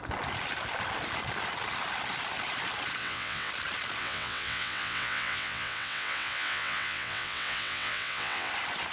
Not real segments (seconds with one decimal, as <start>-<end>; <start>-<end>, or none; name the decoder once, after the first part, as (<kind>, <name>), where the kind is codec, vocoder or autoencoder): 3.0-3.5 (vocoder, WaveNeXt); 4.0-8.5